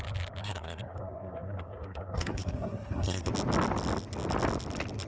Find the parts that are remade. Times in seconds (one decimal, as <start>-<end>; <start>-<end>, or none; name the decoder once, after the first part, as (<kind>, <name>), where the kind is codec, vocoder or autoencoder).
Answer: 0.4-3.3 (codec, SNAC)